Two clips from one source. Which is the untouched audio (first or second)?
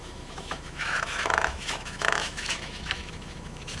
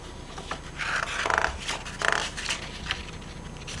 second